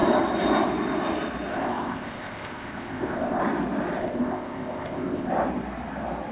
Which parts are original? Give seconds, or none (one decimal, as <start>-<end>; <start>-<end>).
0.0-1.5; 3.4-4.0; 5.3-6.3